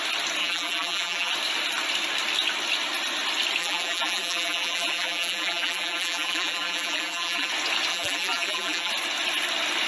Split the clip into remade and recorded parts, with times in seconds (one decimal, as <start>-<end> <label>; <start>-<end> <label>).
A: 0.0-0.4 recorded; 0.4-1.3 remade; 1.3-3.6 recorded; 3.6-7.5 remade; 7.5-7.9 recorded; 7.9-8.9 remade; 8.9-9.9 recorded